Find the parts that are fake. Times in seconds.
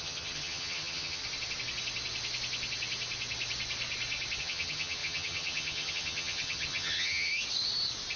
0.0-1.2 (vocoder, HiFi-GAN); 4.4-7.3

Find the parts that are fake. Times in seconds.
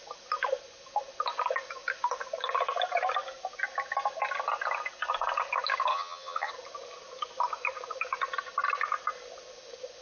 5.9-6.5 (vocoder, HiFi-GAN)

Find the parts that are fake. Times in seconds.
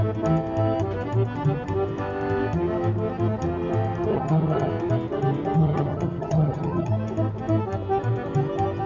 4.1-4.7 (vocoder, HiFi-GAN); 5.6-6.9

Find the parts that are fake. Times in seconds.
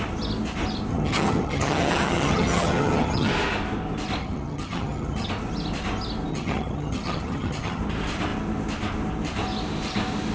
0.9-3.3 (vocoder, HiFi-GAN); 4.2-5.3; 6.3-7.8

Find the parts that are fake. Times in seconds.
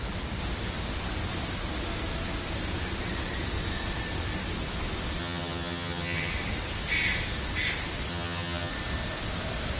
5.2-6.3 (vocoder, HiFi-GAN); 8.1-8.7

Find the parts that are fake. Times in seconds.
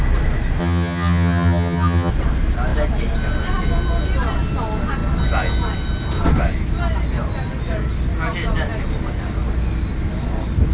0.6-2.1 (vocoder, HiFi-GAN)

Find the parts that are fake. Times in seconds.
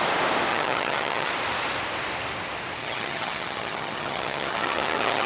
0.5-1.3 (vocoder, HiFi-GAN); 2.8-5.3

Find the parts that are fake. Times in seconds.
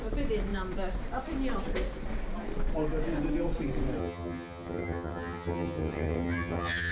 4.0-6.9 (vocoder, HiFi-GAN)